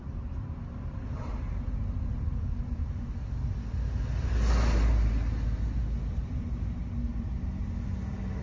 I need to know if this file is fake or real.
real